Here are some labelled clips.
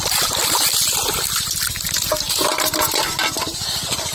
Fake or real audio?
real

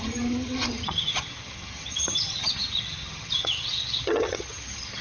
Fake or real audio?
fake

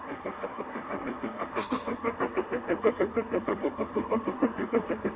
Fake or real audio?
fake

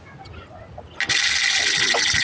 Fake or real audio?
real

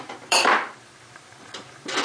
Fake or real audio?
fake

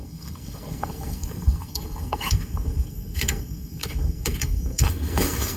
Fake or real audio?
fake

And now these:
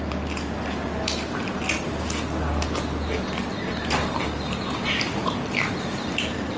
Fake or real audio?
real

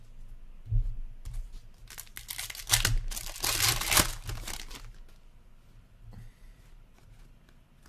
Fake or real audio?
real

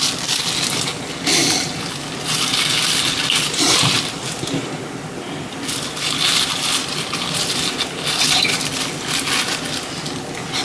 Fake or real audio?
real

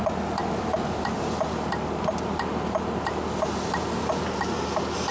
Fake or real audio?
real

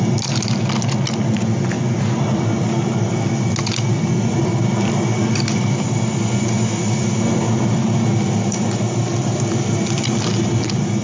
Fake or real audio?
real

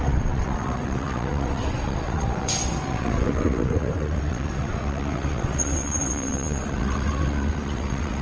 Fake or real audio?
fake